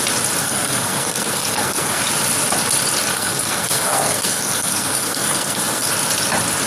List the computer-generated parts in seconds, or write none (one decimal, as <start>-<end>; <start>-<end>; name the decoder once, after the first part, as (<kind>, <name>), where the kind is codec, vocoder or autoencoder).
0.4-2.0 (codec, SNAC); 3.1-5.9